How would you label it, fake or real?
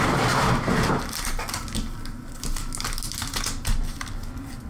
real